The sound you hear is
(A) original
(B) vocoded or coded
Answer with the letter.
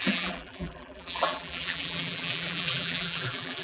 B